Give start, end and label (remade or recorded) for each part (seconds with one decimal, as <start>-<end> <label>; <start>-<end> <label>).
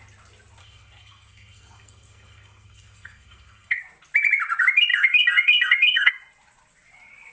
0.0-0.6 recorded; 0.6-3.8 remade; 3.8-4.9 recorded; 4.9-6.1 remade; 6.1-7.3 recorded